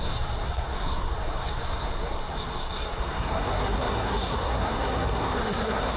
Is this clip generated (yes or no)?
yes